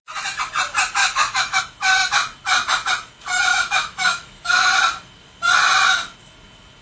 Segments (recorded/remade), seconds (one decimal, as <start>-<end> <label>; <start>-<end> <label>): 0.0-1.0 recorded; 1.0-1.6 remade; 1.6-3.5 recorded; 3.5-4.7 remade; 4.7-6.8 recorded